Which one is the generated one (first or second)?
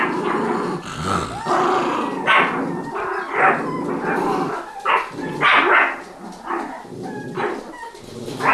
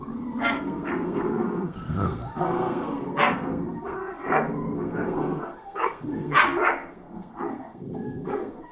second